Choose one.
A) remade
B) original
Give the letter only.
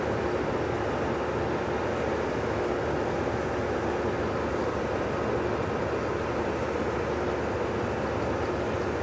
B